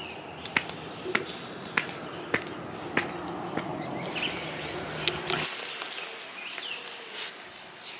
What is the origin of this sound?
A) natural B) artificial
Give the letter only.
A